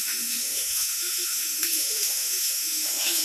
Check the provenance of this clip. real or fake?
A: fake